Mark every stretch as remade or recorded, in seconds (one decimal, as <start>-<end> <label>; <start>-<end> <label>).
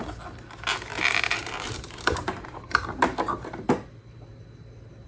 0.0-1.4 recorded; 1.4-3.5 remade; 3.5-5.1 recorded